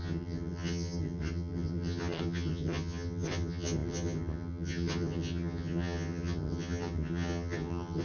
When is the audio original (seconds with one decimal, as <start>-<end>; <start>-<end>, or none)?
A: none